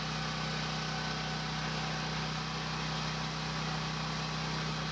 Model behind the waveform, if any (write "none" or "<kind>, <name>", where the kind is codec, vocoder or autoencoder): none